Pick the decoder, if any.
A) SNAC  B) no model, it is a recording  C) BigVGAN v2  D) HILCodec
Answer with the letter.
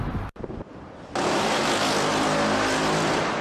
C